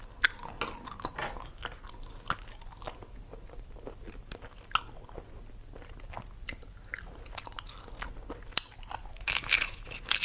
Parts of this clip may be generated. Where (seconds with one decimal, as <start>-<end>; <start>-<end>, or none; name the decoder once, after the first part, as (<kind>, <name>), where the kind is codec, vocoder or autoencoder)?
9.1-10.2 (autoencoder, DAC-VAE)

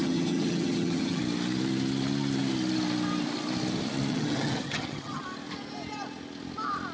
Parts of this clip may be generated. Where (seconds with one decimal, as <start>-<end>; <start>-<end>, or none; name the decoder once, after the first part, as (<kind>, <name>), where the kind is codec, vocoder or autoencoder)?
0.0-1.2 (vocoder, HiFi-GAN); 4.1-5.2

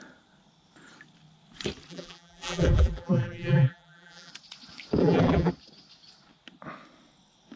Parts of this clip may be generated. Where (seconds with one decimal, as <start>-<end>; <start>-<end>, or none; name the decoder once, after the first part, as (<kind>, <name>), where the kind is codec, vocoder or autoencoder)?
1.9-4.3 (vocoder, BigVGAN v2); 5.0-5.5

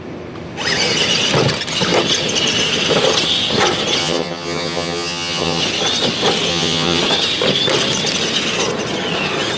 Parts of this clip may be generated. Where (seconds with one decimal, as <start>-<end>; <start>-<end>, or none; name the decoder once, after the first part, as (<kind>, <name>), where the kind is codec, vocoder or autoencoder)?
4.0-5.6 (vocoder, HiFi-GAN); 6.5-7.0